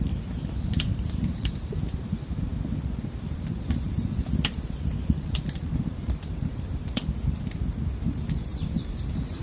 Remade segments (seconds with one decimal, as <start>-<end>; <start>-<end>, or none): 0.0-2.5; 3.2-7.0; 8.1-9.4